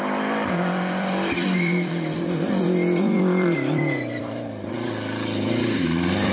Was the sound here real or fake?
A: fake